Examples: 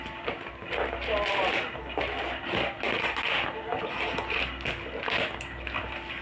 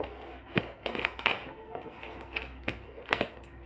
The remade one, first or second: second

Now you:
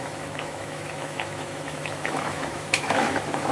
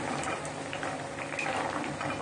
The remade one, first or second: first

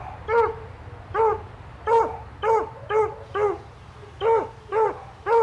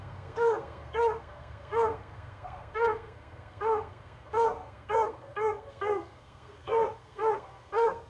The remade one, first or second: second